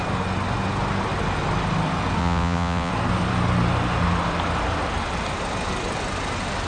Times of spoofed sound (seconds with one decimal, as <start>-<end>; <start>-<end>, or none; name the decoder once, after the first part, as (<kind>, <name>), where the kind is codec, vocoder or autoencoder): 2.2-2.9 (vocoder, WaveNeXt)